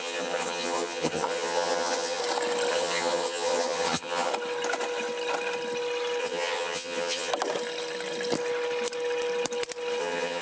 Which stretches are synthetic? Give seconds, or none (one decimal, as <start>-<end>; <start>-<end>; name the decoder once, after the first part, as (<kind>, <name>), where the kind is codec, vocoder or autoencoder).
0.0-2.2 (vocoder, HiFi-GAN); 2.7-4.3; 6.2-7.3; 10.0-10.4